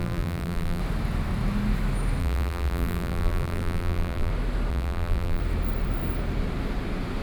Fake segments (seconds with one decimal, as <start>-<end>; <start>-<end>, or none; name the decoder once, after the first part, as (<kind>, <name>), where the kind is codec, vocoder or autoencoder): 0.0-0.8 (vocoder, BigVGAN v2); 2.2-4.3; 4.7-5.4